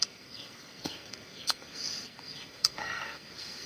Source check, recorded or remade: remade